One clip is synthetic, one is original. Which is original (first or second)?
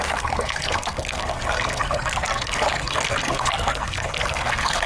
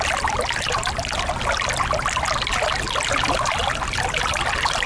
second